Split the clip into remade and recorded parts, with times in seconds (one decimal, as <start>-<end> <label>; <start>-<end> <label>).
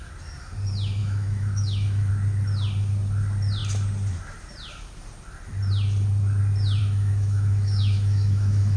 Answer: 0.0-1.0 recorded; 1.0-2.1 remade; 2.1-6.8 recorded; 6.8-8.8 remade